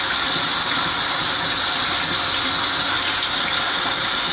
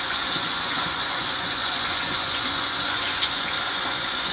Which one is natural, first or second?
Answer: first